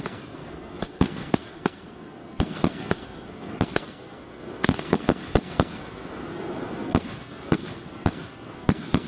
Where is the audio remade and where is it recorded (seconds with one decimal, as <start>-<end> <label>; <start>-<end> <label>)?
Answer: 0.0-9.1 remade